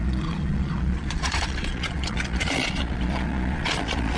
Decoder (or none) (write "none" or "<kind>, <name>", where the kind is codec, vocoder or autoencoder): vocoder, Vocos